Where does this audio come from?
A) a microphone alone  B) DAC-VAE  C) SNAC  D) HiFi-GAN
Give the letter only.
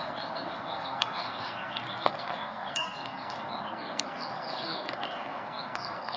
C